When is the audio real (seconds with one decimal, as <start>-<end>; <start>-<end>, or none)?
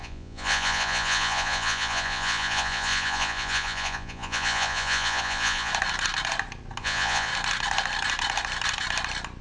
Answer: 5.7-6.8; 7.3-9.4